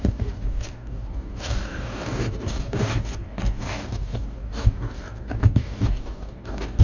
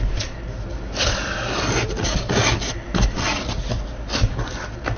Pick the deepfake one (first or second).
first